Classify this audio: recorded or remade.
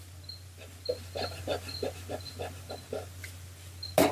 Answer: recorded